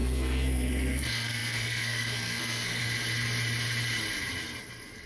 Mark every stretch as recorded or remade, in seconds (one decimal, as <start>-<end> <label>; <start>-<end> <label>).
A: 0.0-2.8 remade; 2.8-5.1 recorded